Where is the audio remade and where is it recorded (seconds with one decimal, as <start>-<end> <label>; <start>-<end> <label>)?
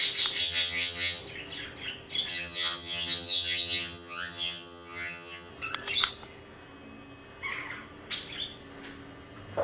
0.0-0.4 recorded; 0.4-1.2 remade; 1.2-2.3 recorded; 2.3-5.5 remade; 5.5-9.6 recorded